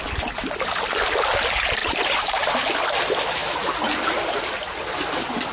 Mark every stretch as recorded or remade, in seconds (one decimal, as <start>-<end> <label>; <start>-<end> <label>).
0.0-1.8 recorded; 1.8-2.4 remade; 2.4-5.5 recorded